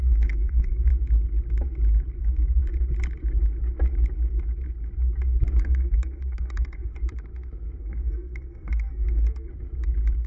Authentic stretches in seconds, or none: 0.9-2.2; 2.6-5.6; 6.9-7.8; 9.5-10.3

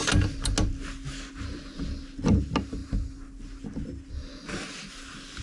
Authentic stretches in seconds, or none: 0.0-5.4